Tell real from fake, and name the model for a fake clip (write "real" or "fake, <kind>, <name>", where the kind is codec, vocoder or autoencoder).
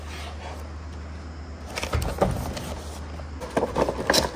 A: real